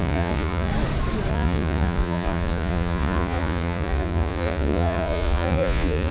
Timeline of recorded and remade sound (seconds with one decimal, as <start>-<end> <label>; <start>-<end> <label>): 0.0-0.7 remade; 0.7-1.3 recorded; 1.3-6.1 remade